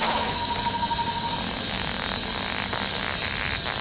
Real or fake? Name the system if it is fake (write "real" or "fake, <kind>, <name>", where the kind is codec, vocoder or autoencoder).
real